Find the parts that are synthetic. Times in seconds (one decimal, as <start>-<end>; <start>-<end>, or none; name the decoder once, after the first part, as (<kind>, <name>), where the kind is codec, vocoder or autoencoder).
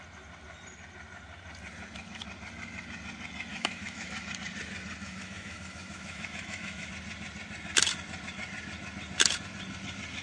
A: 3.5-4.3 (autoencoder, DAC-VAE); 5.0-6.9